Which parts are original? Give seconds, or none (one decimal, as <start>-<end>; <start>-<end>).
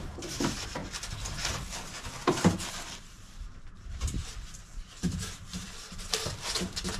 0.8-2.7